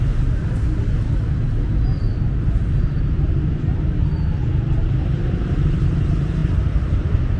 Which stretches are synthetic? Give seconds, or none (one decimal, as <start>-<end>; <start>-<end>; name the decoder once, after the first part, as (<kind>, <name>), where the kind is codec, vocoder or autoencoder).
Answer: 4.4-5.9 (vocoder, BigVGAN v2); 6.4-7.4